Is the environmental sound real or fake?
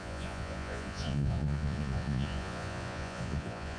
fake